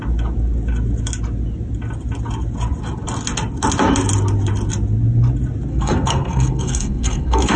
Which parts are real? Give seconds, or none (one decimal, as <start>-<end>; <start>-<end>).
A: 0.0-5.7